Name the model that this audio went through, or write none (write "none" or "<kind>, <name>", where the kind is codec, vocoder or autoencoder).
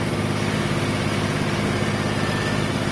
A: none